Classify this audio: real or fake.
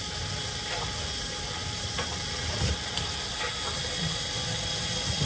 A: real